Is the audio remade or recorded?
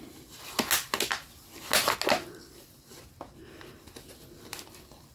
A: recorded